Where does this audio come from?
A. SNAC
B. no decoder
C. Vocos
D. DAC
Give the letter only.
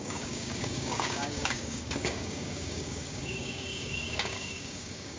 D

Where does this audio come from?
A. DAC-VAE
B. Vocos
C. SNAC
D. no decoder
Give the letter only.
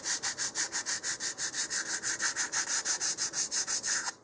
D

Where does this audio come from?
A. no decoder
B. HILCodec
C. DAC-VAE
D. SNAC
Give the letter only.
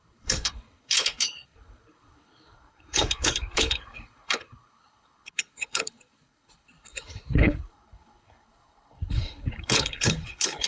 B